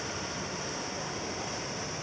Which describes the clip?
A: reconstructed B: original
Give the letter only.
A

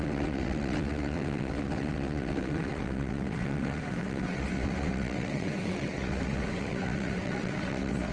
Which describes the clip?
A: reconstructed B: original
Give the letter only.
A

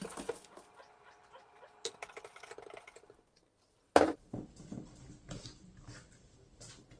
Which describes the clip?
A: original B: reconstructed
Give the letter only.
A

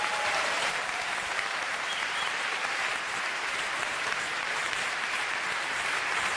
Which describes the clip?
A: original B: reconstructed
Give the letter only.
B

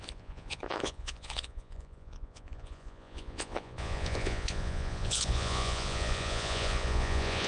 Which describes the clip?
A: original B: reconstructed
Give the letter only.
B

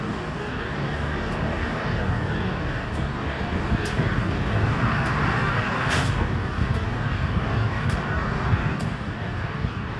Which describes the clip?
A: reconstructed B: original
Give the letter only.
A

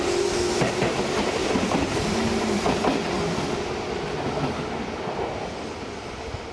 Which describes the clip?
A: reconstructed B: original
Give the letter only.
B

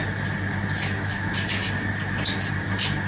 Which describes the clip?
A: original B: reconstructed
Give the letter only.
A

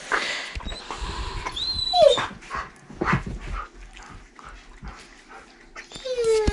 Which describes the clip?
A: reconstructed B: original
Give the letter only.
B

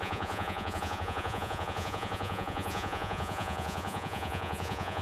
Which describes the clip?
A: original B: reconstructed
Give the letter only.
B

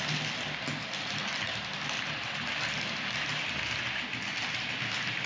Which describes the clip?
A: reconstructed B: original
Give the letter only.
B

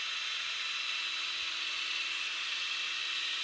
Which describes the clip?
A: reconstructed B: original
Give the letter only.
B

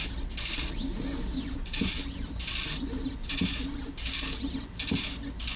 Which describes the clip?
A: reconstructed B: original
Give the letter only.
B